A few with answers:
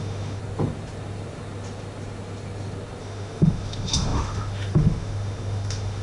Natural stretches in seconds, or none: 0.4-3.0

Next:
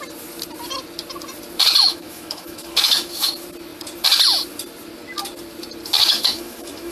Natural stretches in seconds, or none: 0.0-1.8; 3.3-6.0

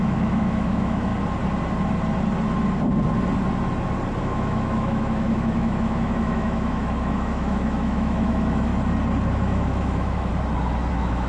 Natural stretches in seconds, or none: 1.1-4.2; 8.7-9.3; 10.3-10.9

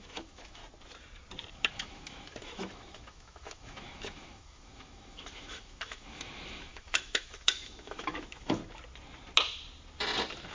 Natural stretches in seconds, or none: 0.6-1.5; 8.6-10.5